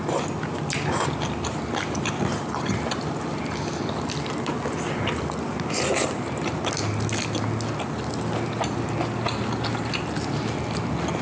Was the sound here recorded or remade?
recorded